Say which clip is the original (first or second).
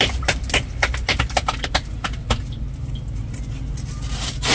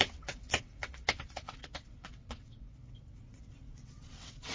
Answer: first